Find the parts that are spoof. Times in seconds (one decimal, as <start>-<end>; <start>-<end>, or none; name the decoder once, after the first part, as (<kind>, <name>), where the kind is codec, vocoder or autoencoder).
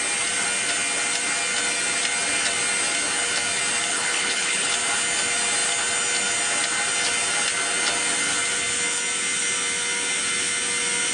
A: 3.9-4.7 (codec, HILCodec)